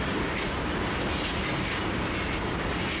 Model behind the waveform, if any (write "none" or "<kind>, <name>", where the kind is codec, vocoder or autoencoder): none